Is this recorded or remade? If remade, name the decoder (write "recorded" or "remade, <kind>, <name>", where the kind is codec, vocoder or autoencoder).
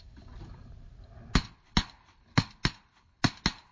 recorded